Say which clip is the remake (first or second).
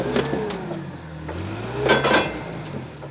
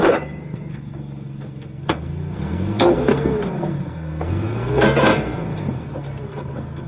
second